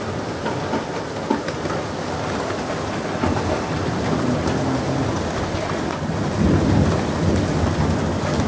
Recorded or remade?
recorded